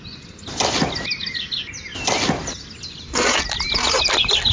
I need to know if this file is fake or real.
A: real